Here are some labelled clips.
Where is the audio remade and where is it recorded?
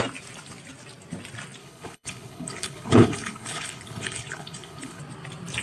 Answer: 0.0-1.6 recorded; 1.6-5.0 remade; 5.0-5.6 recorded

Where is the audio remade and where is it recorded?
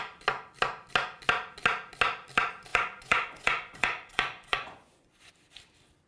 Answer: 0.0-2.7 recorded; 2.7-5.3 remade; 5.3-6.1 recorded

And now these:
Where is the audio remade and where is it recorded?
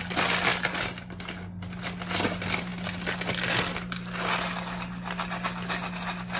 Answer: 0.0-6.4 recorded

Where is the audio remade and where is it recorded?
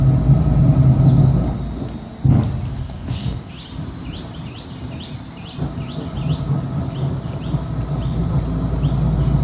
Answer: 0.0-2.8 recorded; 2.8-3.5 remade; 3.5-9.4 recorded